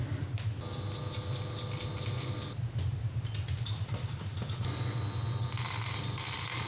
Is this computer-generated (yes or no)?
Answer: no